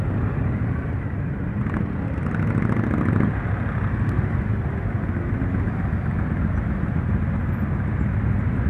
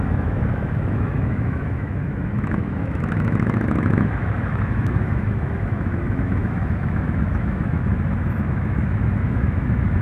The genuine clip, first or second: first